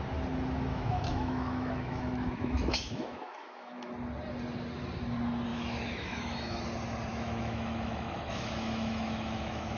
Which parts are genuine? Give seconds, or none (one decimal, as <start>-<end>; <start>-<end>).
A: 0.0-0.7; 3.9-5.5; 6.6-7.1